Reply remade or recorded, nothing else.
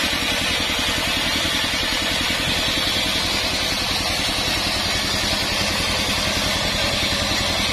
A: recorded